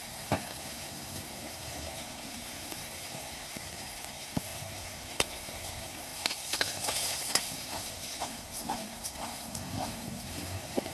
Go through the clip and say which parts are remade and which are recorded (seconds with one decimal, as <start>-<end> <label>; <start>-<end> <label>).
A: 0.0-10.9 remade